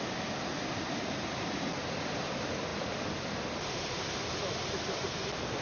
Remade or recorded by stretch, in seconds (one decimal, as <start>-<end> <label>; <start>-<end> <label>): 0.0-5.6 recorded